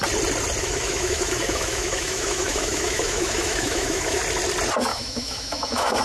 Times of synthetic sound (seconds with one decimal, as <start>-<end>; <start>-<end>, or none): 0.6-4.2; 4.9-6.0